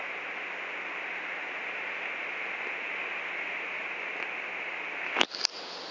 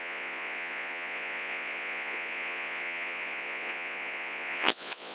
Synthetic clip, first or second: second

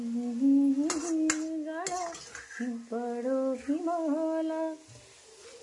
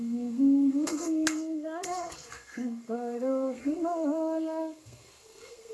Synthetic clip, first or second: second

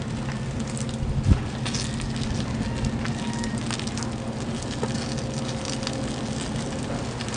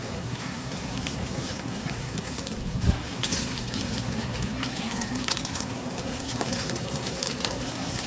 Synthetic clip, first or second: second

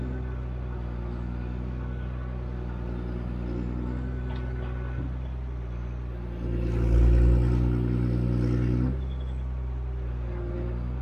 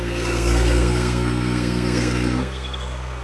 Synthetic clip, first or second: second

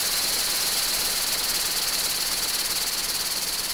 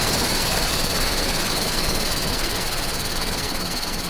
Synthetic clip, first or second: second